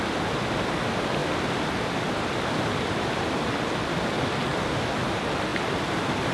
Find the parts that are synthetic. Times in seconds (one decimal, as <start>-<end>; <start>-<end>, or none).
none